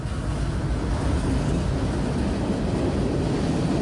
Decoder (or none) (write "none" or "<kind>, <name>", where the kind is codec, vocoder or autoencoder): none